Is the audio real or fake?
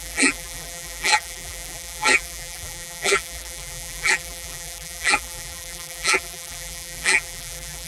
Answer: fake